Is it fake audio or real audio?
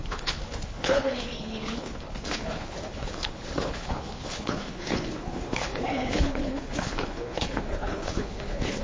fake